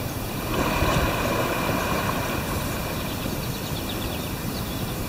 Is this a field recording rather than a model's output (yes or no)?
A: no